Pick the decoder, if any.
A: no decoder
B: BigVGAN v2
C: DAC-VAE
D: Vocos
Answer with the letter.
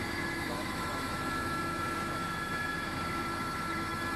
C